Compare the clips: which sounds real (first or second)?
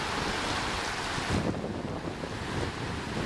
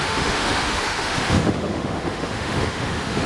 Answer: first